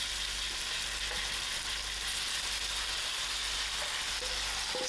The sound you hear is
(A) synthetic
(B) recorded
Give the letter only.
B